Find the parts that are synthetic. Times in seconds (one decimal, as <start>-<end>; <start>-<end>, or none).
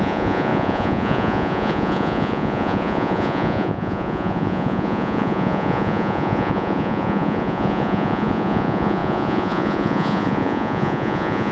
0.0-11.5